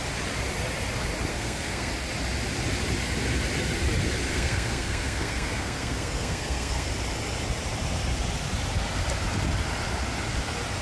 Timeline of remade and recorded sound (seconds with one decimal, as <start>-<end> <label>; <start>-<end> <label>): 0.0-1.3 recorded; 1.3-1.9 remade; 1.9-4.3 recorded; 4.3-6.9 remade; 6.9-10.8 recorded